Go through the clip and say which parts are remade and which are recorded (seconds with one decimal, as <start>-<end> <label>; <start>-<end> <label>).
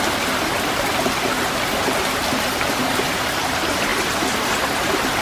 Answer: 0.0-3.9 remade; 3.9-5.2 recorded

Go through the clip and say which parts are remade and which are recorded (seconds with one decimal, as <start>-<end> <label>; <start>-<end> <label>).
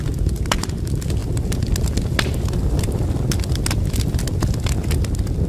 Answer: 0.0-5.5 recorded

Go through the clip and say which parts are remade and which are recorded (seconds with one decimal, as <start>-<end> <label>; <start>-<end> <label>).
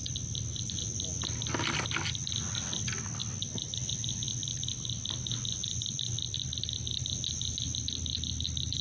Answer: 0.0-8.8 recorded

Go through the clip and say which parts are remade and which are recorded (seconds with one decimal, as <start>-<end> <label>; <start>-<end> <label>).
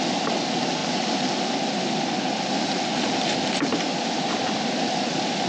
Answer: 0.0-0.8 recorded; 0.8-2.8 remade; 2.8-3.7 recorded; 3.7-4.8 remade; 4.8-5.5 recorded